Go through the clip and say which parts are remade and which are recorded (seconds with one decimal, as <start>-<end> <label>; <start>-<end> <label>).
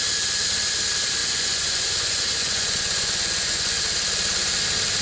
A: 0.0-1.2 recorded; 1.2-3.8 remade; 3.8-5.0 recorded